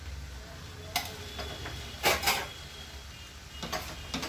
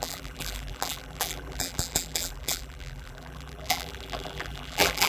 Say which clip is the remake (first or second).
second